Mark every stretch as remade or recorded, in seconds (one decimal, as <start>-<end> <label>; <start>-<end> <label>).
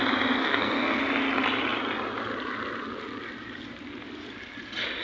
0.0-0.4 recorded; 0.4-1.0 remade; 1.0-5.0 recorded